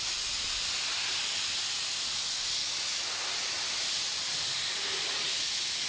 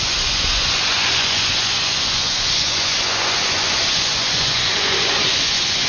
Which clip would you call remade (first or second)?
second